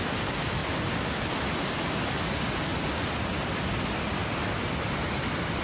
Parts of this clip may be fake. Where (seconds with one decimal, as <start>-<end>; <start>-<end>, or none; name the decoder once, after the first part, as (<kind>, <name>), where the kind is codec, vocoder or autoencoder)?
none